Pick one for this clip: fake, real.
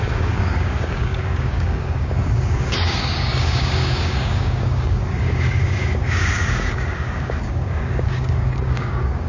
fake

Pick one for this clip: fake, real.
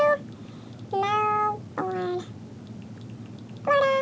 real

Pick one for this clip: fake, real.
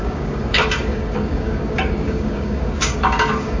fake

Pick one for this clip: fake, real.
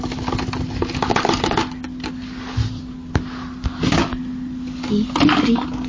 real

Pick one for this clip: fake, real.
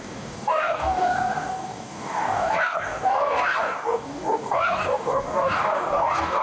fake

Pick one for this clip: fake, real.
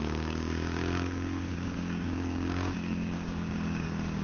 fake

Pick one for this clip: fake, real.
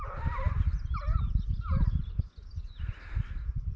real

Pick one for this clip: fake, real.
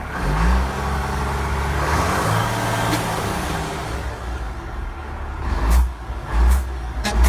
fake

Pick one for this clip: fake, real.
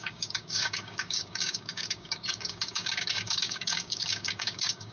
fake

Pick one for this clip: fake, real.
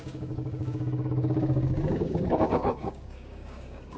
fake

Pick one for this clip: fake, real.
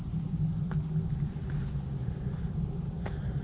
real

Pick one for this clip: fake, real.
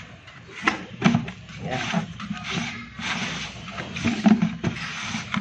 real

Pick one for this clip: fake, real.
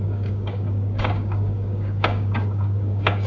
fake